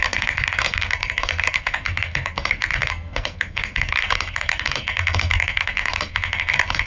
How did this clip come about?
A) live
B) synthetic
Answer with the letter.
B